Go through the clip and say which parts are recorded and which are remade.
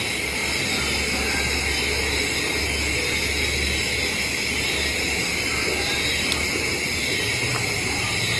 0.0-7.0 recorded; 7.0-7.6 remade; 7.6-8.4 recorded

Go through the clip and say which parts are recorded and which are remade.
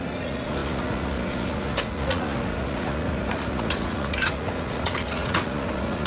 0.0-6.1 remade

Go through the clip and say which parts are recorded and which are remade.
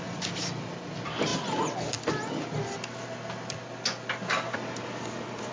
0.0-5.5 recorded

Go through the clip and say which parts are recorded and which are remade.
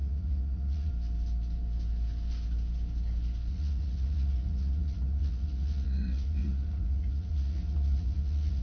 0.0-0.9 remade; 0.9-3.5 recorded; 3.5-8.6 remade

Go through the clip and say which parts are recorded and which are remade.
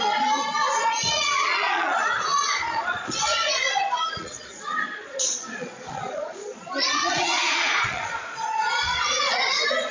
0.0-9.9 remade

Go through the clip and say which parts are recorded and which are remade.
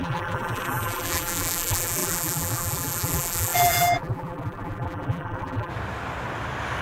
0.0-5.7 remade; 5.7-6.8 recorded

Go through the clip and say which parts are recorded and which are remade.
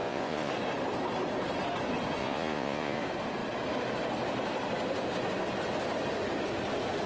0.0-0.5 remade; 0.5-2.2 recorded; 2.2-3.0 remade; 3.0-7.1 recorded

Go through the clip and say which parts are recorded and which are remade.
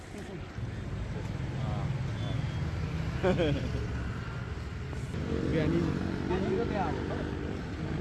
0.0-8.0 recorded